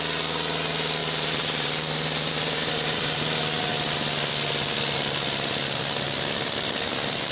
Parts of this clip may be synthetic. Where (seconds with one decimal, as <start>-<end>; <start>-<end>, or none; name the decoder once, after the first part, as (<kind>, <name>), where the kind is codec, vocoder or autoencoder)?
1.0-3.2 (vocoder, BigVGAN v2)